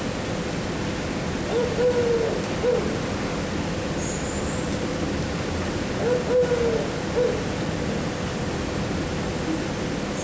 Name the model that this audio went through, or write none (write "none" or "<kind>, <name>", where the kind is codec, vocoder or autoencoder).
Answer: none